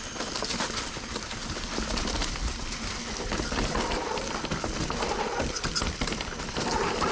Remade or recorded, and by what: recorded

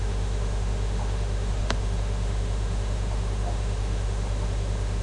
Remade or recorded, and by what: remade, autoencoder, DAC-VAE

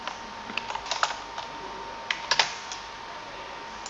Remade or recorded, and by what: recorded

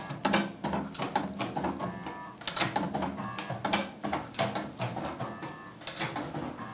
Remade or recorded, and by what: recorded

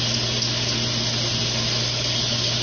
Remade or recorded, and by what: recorded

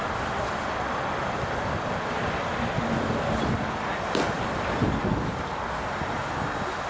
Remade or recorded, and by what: recorded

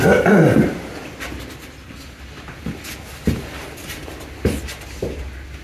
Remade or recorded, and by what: recorded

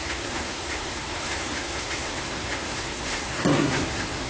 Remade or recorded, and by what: remade, codec, SNAC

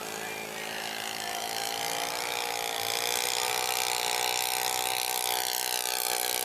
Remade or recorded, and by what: recorded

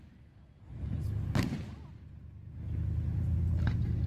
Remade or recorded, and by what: recorded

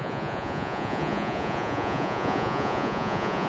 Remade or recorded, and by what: remade, vocoder, Vocos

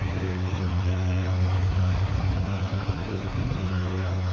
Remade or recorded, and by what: remade, codec, SNAC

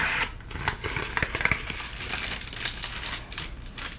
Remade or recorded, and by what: recorded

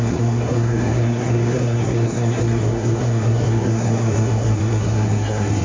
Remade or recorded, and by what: remade, codec, SNAC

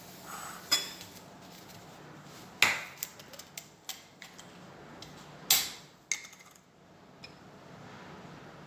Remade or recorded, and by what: recorded